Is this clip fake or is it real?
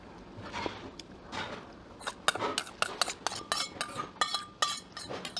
real